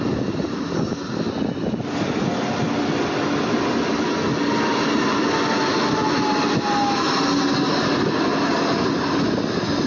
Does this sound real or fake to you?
real